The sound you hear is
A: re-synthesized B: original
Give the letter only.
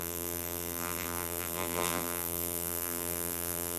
A